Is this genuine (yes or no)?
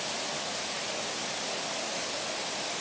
yes